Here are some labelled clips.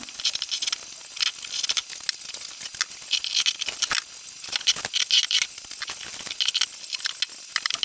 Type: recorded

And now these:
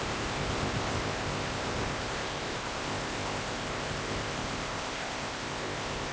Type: remade